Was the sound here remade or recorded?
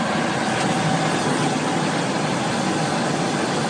remade